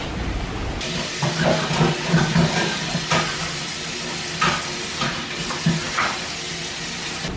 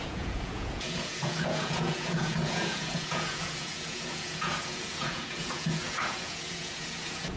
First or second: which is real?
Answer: first